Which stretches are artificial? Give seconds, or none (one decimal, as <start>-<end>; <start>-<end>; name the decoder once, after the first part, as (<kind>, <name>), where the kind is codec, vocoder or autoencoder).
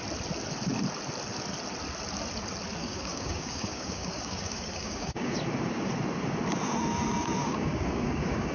2.8-5.4 (codec, DAC); 7.4-8.5